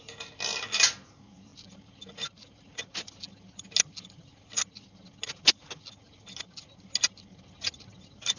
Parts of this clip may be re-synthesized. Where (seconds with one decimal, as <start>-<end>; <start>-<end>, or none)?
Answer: none